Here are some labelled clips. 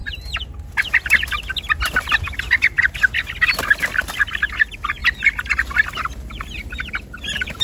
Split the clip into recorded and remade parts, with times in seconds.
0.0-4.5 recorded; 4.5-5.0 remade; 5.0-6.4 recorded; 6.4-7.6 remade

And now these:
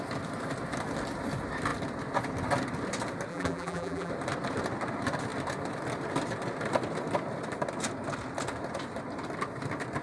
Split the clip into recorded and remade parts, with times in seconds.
0.0-3.3 recorded; 3.3-4.1 remade; 4.1-10.0 recorded

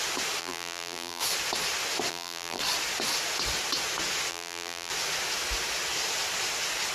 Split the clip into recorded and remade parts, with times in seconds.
0.0-0.4 recorded; 0.4-1.2 remade; 1.2-2.1 recorded; 2.1-2.6 remade; 2.6-4.3 recorded; 4.3-4.9 remade; 4.9-6.9 recorded